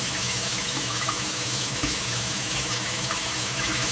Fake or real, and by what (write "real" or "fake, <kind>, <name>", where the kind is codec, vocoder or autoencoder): fake, autoencoder, DAC-VAE